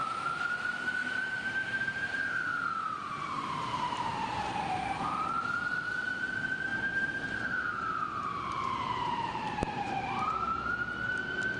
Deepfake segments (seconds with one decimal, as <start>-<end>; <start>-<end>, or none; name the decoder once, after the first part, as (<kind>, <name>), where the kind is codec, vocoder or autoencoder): 0.0-0.6 (vocoder, BigVGAN v2); 1.0-5.6; 6.7-10.6